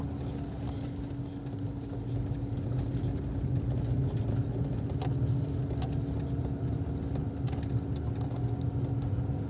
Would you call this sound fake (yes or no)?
no